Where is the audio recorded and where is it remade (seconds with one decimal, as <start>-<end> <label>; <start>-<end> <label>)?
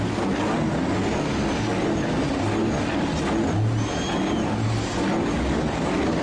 0.0-6.2 recorded